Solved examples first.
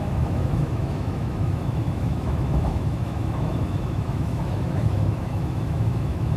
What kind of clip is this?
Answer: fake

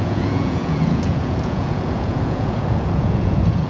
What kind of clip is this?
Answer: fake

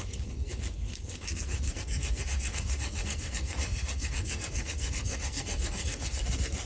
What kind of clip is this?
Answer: fake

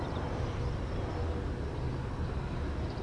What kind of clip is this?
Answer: real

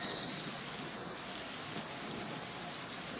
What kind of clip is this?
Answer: real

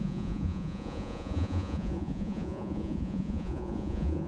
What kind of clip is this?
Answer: fake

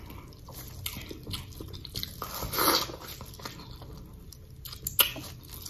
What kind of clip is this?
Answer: real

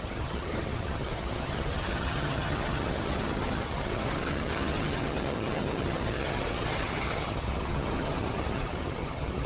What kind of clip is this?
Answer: fake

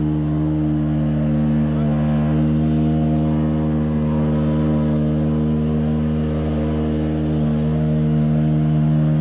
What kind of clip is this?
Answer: real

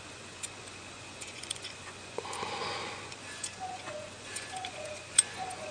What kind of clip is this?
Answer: fake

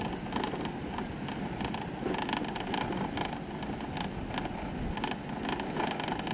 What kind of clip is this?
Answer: real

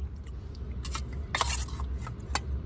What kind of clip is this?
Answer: real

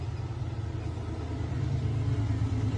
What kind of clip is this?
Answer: real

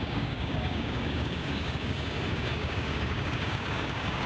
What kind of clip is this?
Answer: fake